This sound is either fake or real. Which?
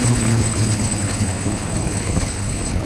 fake